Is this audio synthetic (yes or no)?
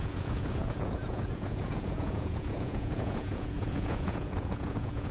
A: yes